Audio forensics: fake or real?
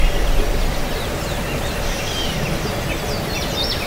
real